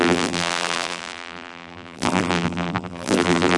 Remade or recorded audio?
remade